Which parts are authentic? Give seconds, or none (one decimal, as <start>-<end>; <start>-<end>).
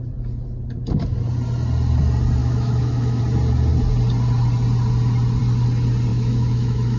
0.0-2.4; 3.2-6.1